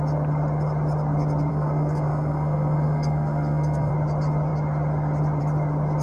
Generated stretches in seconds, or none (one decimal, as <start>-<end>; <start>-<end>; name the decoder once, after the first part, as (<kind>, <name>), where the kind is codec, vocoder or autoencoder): 1.5-3.9 (codec, SNAC)

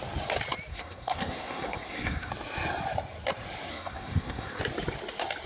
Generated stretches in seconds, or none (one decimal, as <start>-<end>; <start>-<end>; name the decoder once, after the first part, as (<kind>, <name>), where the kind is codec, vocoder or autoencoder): 0.7-2.3 (codec, SNAC); 3.7-4.6

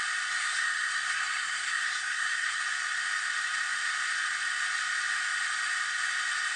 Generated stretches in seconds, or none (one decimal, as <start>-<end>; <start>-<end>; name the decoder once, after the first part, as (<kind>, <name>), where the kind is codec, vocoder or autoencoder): 0.4-2.6 (codec, SNAC)

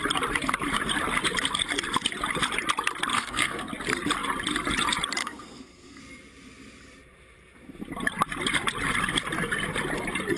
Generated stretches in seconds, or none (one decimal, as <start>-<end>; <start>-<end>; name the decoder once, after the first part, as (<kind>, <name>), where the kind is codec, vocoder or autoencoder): 3.1-3.7 (codec, SNAC); 5.2-6.0

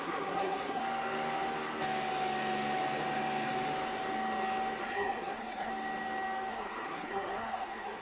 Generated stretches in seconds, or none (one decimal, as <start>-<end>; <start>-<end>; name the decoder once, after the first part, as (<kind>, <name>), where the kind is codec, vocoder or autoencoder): 0.0-0.8 (codec, SNAC); 4.8-5.7; 6.5-8.0

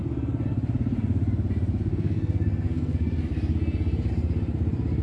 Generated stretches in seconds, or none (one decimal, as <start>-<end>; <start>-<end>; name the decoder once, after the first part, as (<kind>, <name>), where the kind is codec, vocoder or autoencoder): 1.9-3.1 (codec, SNAC)

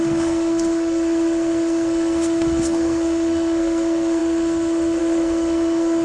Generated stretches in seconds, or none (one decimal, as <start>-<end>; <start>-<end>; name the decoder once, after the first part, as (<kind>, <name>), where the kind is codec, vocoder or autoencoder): 0.0-6.0 (codec, SNAC)

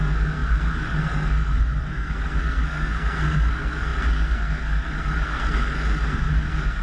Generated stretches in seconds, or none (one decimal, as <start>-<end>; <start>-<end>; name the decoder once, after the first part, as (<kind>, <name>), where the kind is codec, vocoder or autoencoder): 0.0-6.8 (codec, SNAC)